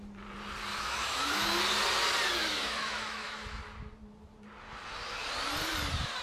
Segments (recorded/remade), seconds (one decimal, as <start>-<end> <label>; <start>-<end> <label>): 0.0-0.7 recorded; 0.7-1.6 remade; 1.6-2.4 recorded; 2.4-3.6 remade; 3.6-6.2 recorded